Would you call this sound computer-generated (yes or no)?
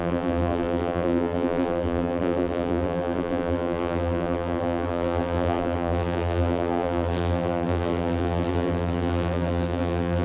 yes